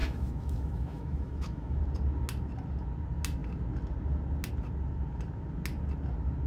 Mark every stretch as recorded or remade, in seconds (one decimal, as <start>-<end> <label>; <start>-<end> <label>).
0.0-1.8 remade; 1.8-6.5 recorded